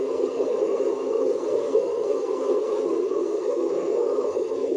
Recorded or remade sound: remade